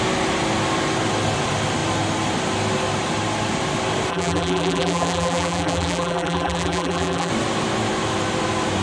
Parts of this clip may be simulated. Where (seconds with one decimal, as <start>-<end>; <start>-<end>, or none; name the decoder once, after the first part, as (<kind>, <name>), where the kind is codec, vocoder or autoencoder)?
4.1-7.3 (vocoder, BigVGAN v2)